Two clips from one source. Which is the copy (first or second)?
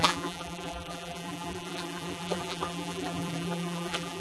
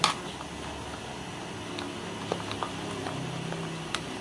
first